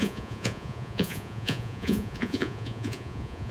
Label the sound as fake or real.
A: fake